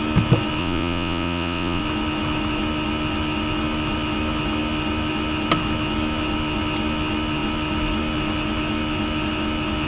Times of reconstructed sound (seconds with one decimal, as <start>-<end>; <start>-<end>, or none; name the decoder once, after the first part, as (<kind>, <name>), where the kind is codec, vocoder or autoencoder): 0.6-1.8 (vocoder, Vocos)